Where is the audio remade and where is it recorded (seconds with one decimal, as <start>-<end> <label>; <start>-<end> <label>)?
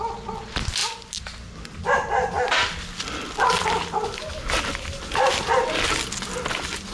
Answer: 0.0-6.9 recorded